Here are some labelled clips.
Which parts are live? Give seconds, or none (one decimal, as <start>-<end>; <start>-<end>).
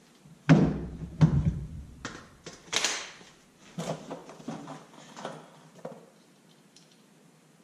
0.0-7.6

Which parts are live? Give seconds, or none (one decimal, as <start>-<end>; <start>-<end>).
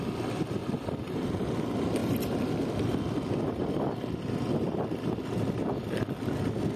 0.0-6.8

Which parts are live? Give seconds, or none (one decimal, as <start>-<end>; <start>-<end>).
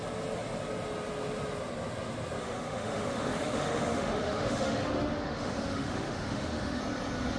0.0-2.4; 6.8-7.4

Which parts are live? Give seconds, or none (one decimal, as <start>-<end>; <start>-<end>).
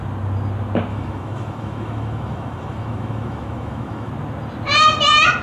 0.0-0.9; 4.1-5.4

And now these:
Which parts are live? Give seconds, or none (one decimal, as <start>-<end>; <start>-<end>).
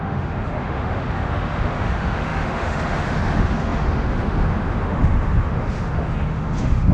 none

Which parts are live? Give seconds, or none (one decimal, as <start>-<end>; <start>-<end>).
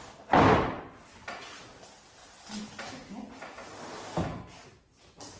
0.0-5.4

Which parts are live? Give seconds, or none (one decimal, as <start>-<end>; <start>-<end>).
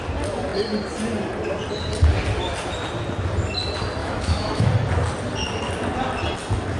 0.0-4.0; 4.7-6.8